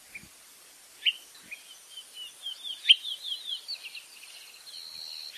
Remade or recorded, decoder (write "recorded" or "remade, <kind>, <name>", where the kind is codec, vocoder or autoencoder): recorded